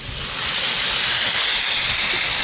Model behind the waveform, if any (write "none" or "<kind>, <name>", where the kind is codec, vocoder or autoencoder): none